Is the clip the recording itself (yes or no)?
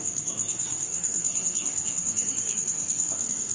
no